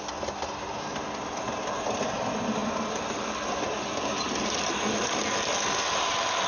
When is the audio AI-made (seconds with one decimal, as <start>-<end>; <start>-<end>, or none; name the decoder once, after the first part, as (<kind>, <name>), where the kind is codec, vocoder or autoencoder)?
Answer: none